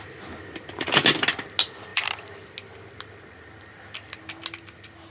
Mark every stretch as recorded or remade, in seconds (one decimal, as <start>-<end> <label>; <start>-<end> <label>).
0.0-5.1 recorded